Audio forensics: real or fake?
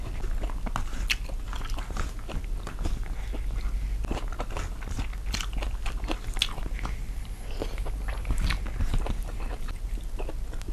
real